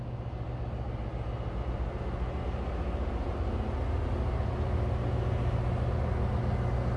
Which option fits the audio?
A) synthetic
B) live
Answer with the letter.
B